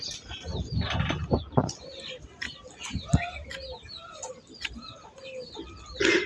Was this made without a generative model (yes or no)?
yes